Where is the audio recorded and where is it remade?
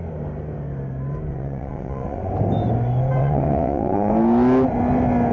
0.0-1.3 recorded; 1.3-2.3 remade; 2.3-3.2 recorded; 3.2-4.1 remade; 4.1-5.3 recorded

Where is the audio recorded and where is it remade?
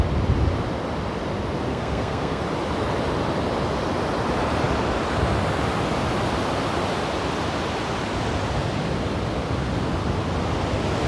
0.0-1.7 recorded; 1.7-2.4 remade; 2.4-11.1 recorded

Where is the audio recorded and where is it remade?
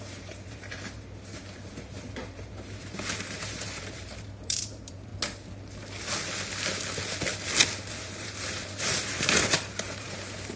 0.0-5.1 remade; 5.1-7.9 recorded; 7.9-10.6 remade